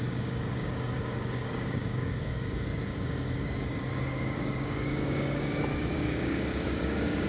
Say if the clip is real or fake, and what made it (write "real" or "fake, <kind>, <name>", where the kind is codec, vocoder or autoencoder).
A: fake, codec, DAC